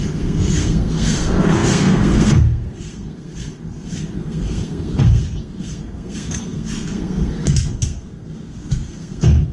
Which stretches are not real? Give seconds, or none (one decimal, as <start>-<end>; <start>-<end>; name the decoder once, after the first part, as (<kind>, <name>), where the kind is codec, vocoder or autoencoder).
0.0-9.5 (codec, SNAC)